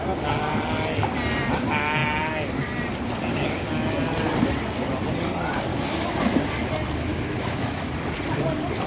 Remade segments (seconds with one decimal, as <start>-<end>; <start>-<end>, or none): 5.7-6.4; 7.1-7.9

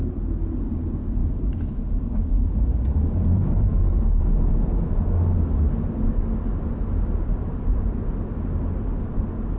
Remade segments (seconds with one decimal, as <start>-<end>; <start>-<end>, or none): 1.2-4.2; 6.5-8.1

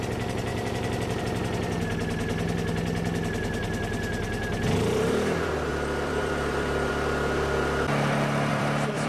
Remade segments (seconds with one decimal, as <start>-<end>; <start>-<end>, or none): 0.5-1.2; 5.7-6.9; 8.5-9.1

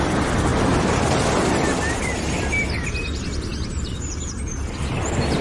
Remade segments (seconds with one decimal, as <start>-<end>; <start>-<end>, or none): none

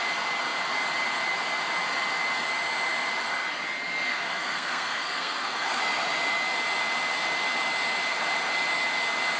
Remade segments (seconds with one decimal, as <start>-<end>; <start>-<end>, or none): 4.1-5.8

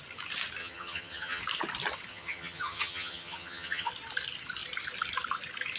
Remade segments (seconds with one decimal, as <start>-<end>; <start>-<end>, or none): 0.6-1.4; 2.1-3.9

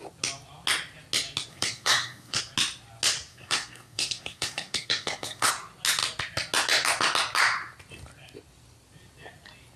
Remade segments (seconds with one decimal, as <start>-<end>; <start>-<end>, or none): 1.5-2.4; 3.3-5.5